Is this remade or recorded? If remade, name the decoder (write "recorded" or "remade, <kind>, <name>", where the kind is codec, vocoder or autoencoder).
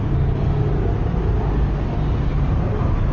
recorded